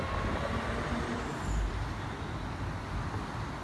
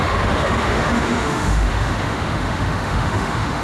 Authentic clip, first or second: first